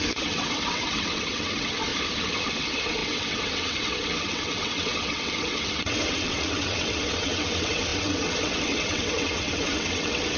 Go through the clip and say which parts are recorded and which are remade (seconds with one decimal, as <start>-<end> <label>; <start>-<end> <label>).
0.0-1.9 remade; 1.9-2.5 recorded; 2.5-10.4 remade